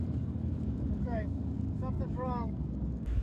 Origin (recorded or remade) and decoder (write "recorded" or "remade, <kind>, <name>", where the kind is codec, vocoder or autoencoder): remade, codec, DAC